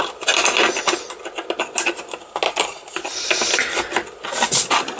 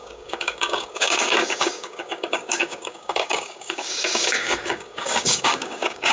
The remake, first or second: second